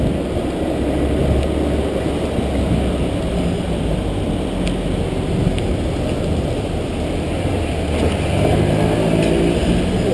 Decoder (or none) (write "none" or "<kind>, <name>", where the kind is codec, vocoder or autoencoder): none